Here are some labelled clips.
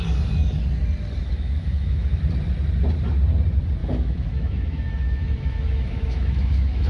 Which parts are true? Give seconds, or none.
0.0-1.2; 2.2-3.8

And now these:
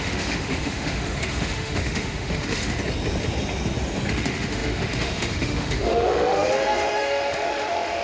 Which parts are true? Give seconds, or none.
2.8-4.1

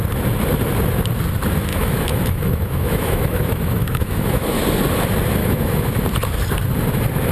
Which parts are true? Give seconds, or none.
0.0-1.7; 4.6-5.4; 5.9-7.3

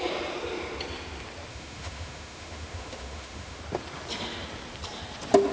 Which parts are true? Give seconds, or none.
0.0-1.5; 3.6-5.5

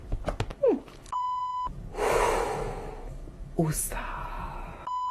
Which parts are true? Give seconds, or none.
0.0-0.5; 1.2-1.9